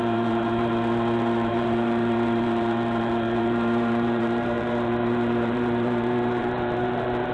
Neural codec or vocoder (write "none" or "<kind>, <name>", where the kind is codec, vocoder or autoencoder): vocoder, BigVGAN v2